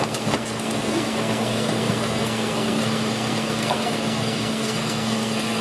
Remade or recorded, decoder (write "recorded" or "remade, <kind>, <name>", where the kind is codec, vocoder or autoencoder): remade, codec, SNAC